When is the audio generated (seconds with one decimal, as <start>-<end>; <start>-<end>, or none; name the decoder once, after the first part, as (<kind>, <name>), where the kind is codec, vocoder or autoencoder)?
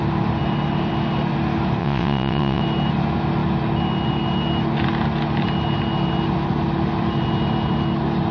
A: 1.8-2.6 (vocoder, WaveNeXt)